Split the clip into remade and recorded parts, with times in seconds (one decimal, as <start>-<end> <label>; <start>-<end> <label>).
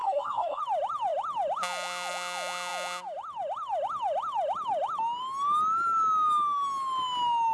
0.0-0.6 remade; 0.6-7.5 recorded